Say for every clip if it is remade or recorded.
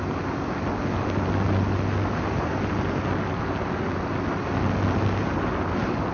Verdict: recorded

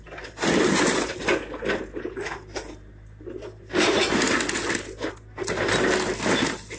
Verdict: recorded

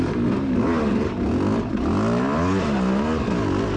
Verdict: recorded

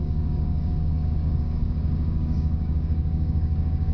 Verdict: remade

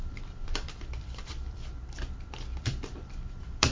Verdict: remade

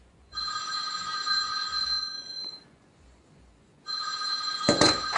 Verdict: remade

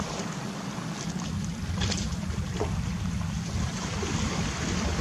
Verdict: recorded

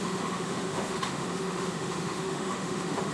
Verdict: remade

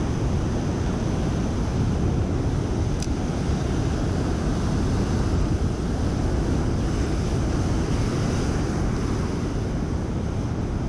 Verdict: recorded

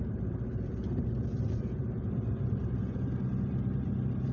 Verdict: remade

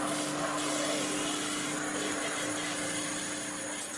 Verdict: recorded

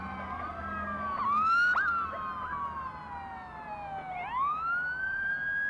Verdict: recorded